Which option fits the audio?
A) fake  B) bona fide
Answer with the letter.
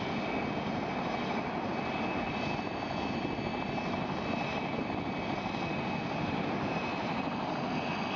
B